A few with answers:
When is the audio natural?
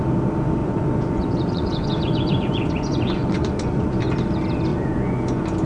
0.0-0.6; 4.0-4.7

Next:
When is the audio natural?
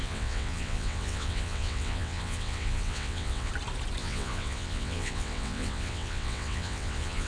3.5-4.0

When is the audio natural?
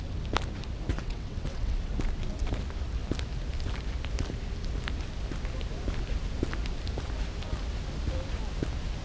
0.0-0.9; 1.9-9.0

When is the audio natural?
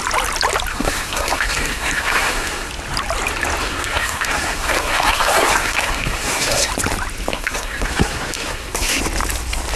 0.0-0.7; 2.7-3.6; 6.7-7.3; 9.0-9.8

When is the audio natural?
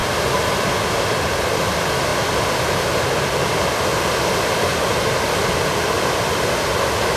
0.0-1.1; 2.1-6.4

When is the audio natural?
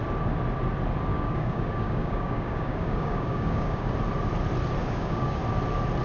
0.0-1.1; 3.9-4.8; 5.4-6.0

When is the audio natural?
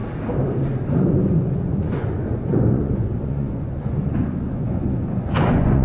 0.0-1.0